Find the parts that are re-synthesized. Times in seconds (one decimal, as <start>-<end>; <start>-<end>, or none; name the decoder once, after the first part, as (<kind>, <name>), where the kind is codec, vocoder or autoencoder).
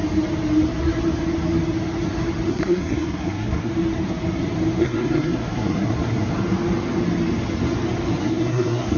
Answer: 2.5-3.7 (codec, SNAC); 4.8-6.3; 8.2-9.0